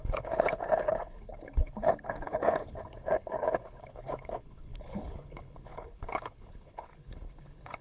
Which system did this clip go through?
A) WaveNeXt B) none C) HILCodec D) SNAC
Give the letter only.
C